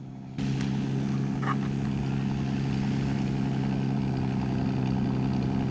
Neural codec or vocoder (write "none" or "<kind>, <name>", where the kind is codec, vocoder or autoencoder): none